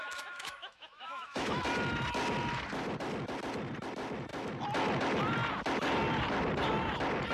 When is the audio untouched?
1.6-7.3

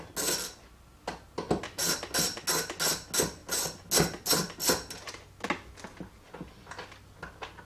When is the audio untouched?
0.0-7.6

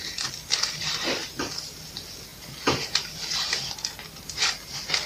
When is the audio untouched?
0.0-2.3; 3.6-5.1

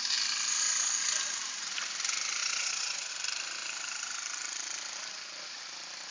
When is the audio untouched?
0.0-2.4; 3.1-6.1